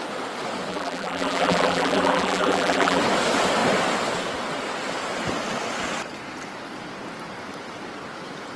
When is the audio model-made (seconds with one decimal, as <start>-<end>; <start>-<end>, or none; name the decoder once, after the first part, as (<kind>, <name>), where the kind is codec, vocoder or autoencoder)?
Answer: 0.7-3.0 (vocoder, BigVGAN v2)